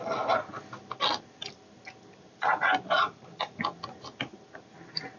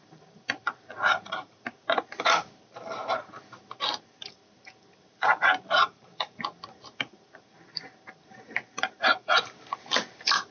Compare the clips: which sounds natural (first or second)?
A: first